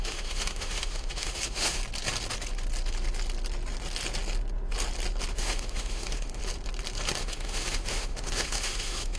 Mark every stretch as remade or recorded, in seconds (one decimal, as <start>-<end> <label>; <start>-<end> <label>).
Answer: 0.0-1.8 remade; 1.8-5.3 recorded; 5.3-6.4 remade; 6.4-7.2 recorded; 7.2-9.2 remade

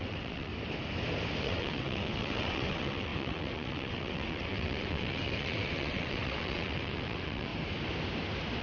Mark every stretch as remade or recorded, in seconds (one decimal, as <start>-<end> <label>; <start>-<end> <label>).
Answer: 0.0-0.5 remade; 0.5-1.4 recorded; 1.4-7.5 remade; 7.5-8.6 recorded